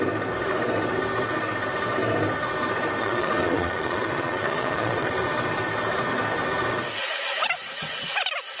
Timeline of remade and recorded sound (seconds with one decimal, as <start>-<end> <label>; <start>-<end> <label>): 0.0-3.0 recorded; 3.0-5.1 remade; 5.1-8.6 recorded